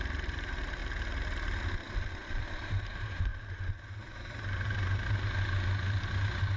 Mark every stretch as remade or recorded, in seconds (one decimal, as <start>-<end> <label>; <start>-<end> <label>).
0.0-0.8 remade; 0.8-2.3 recorded; 2.3-3.3 remade; 3.3-6.6 recorded